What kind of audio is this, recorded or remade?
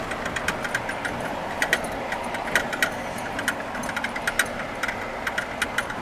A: recorded